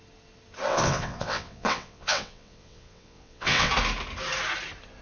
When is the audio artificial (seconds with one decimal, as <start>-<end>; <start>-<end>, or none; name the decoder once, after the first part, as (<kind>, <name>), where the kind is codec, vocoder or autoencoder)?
0.7-3.7 (vocoder, WaveNeXt)